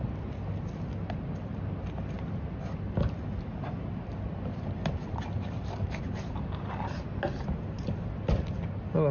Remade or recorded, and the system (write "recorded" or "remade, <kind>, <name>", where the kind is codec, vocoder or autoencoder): recorded